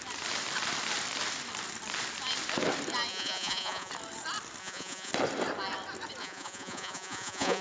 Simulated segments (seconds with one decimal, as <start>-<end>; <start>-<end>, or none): 3.1-3.9; 4.6-5.1; 6.2-7.6